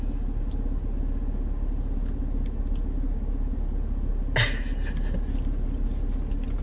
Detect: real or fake real